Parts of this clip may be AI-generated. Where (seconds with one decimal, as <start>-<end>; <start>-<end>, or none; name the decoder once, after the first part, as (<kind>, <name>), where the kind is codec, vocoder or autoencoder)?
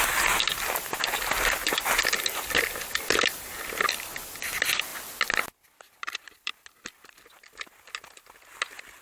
none